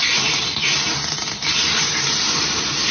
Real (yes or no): no